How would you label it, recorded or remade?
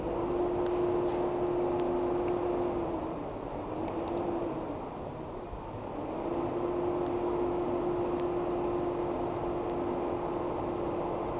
recorded